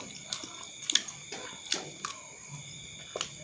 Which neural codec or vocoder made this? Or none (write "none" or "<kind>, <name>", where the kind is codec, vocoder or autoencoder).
none